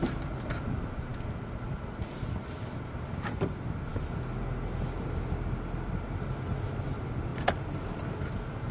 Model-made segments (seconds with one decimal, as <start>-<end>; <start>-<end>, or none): none